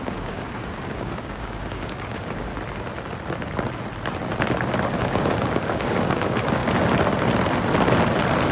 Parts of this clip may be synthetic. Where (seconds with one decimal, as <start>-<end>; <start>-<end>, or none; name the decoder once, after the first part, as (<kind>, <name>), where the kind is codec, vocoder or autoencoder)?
0.0-2.5 (codec, DAC); 5.0-6.6